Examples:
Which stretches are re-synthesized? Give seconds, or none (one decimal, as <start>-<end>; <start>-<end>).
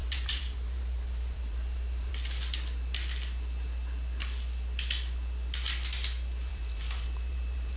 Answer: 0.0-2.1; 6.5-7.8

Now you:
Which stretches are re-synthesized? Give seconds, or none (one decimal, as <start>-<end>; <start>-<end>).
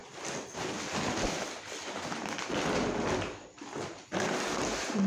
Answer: none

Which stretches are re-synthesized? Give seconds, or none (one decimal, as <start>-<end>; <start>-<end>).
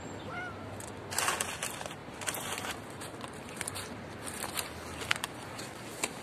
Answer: none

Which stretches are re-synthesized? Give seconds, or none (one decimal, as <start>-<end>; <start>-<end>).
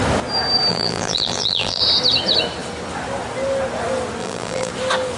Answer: 0.7-1.8; 4.2-4.7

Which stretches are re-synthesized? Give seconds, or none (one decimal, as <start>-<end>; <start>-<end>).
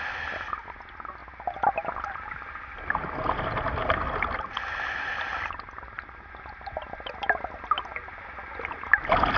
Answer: 5.3-6.3